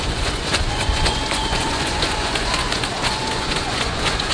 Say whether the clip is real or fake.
fake